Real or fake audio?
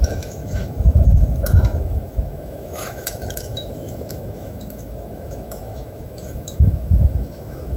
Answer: fake